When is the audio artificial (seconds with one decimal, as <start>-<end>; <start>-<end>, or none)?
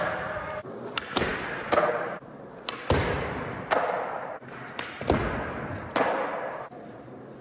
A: 0.0-7.4